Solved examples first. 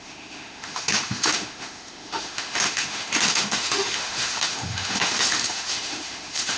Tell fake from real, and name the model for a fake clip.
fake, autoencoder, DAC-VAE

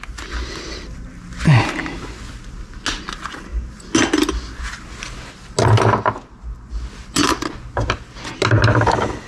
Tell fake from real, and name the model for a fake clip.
real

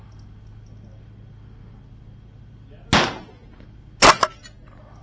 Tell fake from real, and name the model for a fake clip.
real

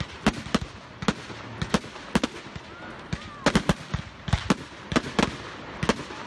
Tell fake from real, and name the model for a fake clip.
real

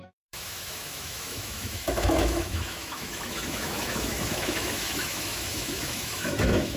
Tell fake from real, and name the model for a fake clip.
fake, autoencoder, DAC-VAE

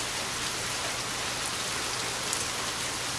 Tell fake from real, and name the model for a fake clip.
real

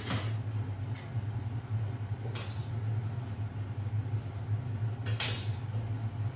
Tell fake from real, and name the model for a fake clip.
real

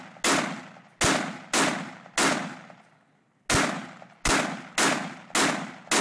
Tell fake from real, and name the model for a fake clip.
real